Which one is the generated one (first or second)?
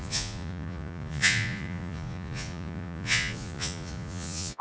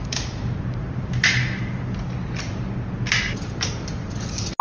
first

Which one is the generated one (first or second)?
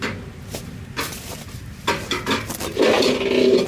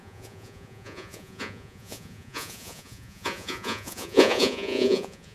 second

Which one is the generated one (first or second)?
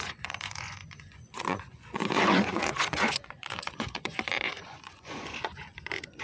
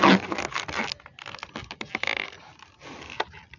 first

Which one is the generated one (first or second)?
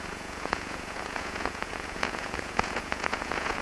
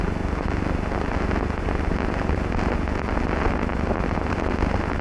first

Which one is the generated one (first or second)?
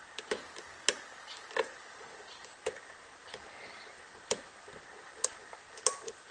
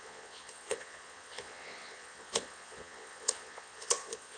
second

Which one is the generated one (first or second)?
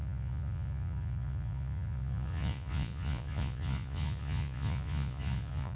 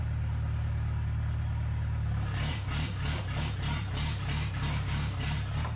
first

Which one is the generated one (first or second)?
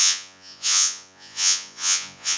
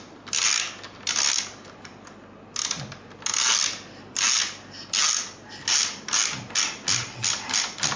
first